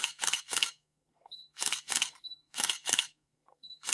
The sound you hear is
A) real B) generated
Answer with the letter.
B